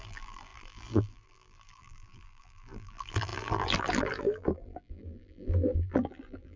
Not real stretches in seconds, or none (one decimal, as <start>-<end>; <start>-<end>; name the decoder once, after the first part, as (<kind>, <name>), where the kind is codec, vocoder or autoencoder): 0.0-6.6 (vocoder, BigVGAN v2)